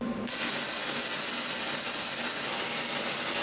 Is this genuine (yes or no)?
yes